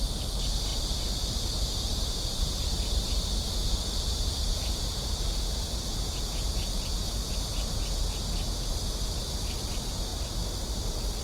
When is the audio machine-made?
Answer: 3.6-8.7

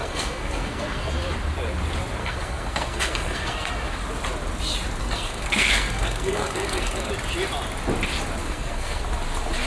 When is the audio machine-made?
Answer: 0.0-1.1; 2.2-3.7; 5.0-7.1; 8.4-9.0